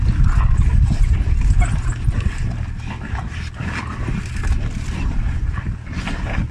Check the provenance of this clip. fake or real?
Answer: real